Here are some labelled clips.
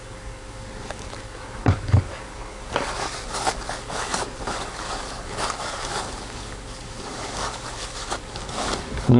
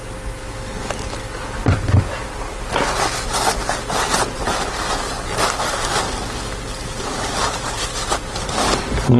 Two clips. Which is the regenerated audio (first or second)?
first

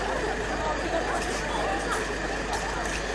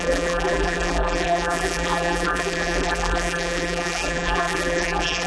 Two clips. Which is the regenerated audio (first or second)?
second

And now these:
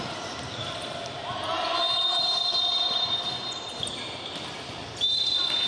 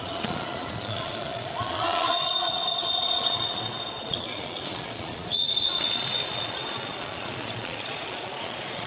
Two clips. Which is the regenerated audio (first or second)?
second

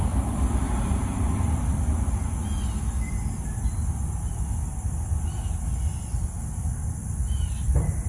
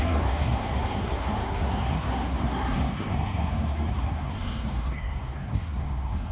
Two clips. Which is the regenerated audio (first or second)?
second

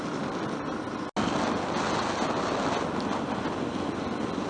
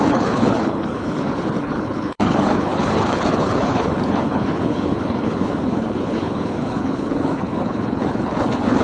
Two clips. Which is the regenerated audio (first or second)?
second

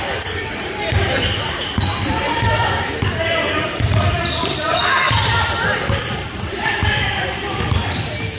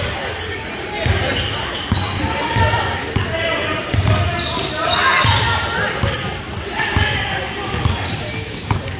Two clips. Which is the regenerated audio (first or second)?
first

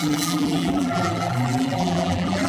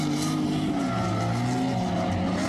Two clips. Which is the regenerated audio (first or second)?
first